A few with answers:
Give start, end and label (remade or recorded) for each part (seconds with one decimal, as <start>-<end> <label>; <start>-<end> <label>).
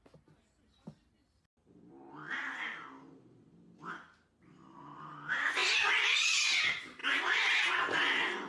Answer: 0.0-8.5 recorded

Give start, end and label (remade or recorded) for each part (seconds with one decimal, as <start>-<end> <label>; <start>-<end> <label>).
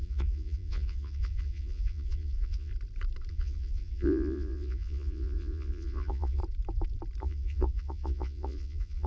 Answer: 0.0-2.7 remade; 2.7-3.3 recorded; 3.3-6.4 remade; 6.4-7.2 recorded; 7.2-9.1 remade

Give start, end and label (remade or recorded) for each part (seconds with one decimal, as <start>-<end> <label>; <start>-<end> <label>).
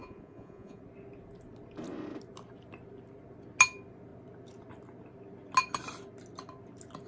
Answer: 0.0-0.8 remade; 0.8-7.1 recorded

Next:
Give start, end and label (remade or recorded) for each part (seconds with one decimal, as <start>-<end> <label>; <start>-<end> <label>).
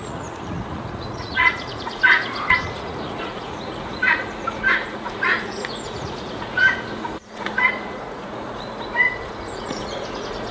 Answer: 0.0-10.5 remade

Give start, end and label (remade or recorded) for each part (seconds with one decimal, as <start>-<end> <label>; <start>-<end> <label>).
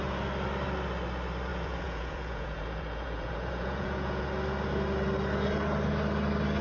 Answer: 0.0-1.5 recorded; 1.5-4.2 remade; 4.2-6.6 recorded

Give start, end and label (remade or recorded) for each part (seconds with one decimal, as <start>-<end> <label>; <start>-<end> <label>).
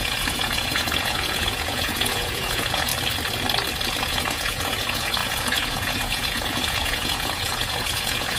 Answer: 0.0-2.9 remade; 2.9-4.0 recorded; 4.0-8.4 remade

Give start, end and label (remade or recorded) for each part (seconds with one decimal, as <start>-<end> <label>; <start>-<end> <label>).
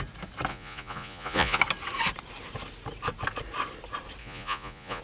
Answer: 0.0-0.5 recorded; 0.5-1.6 remade; 1.6-4.2 recorded; 4.2-5.0 remade